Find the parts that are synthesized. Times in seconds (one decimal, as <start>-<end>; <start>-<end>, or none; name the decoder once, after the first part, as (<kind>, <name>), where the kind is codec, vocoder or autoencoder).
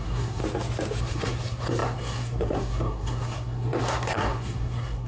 0.0-0.4 (codec, SNAC); 1.0-5.1